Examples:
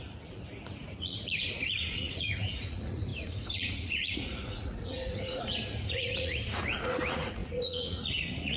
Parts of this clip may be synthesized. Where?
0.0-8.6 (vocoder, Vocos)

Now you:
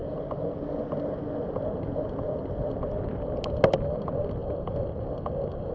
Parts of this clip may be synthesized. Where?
none

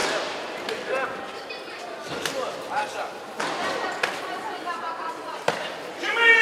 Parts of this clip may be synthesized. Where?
none

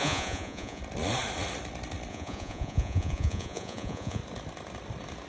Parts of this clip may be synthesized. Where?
0.0-0.8 (vocoder, Vocos); 2.1-4.2

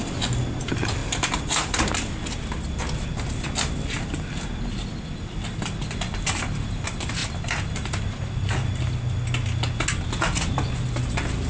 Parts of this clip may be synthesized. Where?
none